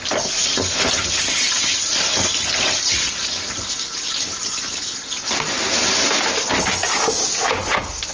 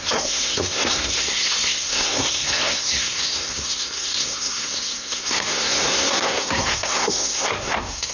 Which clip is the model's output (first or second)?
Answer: second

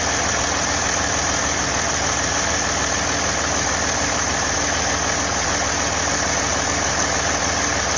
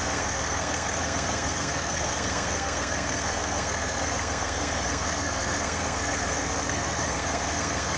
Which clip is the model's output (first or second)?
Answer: second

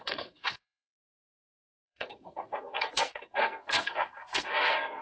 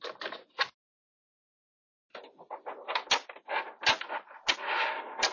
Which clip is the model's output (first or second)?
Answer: first